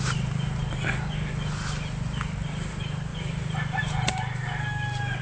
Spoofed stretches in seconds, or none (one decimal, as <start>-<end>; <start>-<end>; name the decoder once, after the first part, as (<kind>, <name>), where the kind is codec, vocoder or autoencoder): 3.1-3.8 (vocoder, BigVGAN v2)